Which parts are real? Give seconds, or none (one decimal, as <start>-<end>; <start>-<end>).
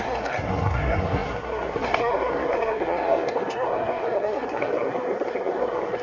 none